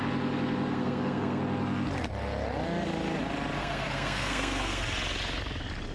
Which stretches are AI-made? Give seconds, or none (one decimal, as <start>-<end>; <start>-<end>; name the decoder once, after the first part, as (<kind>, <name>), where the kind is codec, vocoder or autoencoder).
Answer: 0.7-1.4 (codec, SNAC); 3.6-4.8